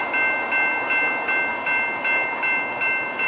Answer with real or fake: real